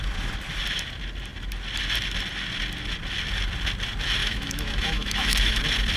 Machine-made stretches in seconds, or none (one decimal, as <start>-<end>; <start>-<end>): 4.2-5.6